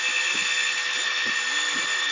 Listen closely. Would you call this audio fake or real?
real